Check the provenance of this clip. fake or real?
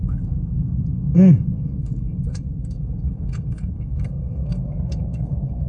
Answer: fake